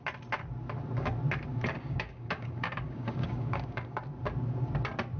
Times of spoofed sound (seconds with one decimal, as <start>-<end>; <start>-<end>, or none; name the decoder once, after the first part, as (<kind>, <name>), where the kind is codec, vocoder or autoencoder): 1.5-4.0 (codec, DAC)